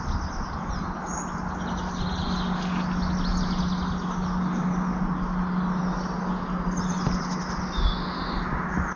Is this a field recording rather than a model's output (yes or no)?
yes